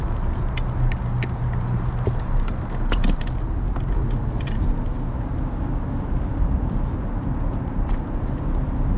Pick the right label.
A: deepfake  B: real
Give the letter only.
B